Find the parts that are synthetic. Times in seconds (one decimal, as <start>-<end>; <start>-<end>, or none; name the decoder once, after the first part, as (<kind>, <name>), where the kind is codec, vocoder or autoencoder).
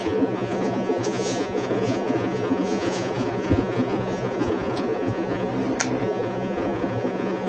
0.0-5.5 (vocoder, Vocos); 6.0-7.5